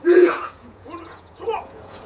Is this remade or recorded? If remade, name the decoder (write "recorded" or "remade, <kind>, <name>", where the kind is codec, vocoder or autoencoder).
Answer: remade, vocoder, Vocos